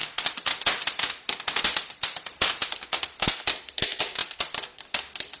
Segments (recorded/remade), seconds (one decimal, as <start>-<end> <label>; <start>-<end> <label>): 0.0-5.4 recorded